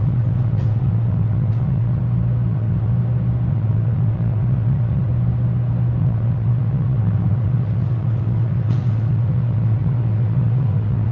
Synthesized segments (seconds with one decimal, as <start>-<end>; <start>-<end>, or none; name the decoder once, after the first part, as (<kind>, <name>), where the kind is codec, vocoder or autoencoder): 0.0-2.0 (vocoder, WaveNeXt); 2.5-2.9; 3.5-5.1; 6.0-11.1